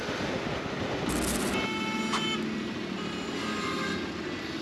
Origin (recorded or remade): recorded